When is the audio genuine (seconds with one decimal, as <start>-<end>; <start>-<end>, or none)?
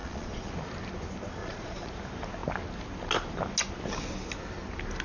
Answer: 0.5-1.4; 1.9-5.0